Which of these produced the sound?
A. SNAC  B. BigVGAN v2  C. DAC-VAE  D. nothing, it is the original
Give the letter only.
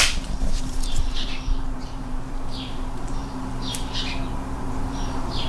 B